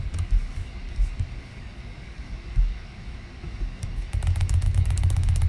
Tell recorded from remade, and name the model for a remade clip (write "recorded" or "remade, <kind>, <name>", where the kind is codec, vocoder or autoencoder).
remade, codec, DAC